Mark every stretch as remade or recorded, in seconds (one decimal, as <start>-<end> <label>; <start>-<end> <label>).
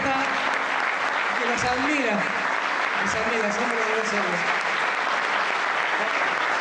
0.0-6.6 recorded